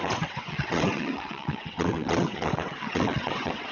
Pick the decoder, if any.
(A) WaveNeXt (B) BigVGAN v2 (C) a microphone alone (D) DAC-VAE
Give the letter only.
A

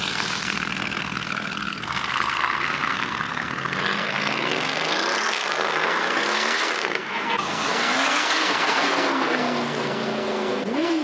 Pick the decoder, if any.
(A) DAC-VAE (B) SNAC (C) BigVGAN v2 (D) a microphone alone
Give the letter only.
B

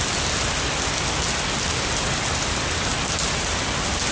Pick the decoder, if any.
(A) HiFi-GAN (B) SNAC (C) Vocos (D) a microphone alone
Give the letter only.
D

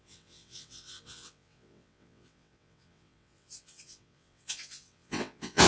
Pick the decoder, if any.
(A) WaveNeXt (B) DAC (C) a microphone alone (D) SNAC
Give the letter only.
A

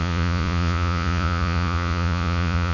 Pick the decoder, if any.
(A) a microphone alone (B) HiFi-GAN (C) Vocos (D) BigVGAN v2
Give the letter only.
C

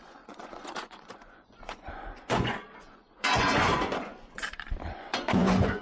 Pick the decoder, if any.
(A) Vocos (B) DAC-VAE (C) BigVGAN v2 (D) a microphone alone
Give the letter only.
A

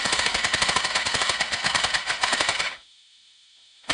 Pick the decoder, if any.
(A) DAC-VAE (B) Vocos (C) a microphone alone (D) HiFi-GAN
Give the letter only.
A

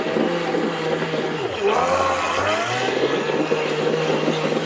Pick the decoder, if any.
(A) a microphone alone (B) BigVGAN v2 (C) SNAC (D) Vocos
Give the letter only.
A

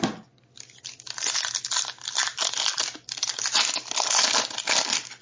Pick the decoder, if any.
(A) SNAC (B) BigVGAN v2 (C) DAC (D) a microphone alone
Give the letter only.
D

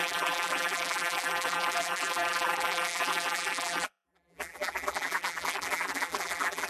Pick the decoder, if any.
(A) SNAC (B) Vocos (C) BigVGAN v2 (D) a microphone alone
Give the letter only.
C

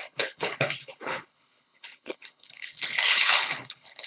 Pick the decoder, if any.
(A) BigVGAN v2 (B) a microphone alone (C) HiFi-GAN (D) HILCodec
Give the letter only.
D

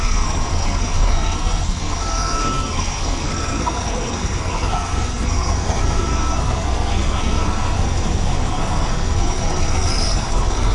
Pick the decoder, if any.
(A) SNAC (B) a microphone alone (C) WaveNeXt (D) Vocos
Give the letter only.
A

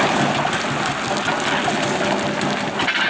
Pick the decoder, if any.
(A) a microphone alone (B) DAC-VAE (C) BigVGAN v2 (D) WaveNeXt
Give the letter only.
A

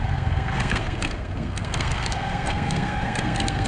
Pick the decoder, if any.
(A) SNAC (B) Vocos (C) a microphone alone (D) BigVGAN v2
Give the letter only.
A